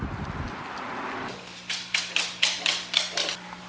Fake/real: real